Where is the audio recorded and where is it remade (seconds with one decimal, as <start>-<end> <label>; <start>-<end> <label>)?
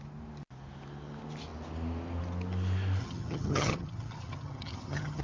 0.0-3.0 recorded; 3.0-5.2 remade